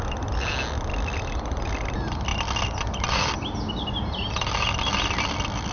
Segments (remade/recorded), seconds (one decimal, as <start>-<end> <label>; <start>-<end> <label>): 0.0-5.7 recorded